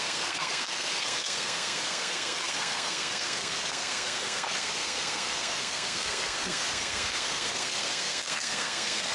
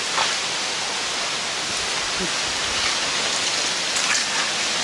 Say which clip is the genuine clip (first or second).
second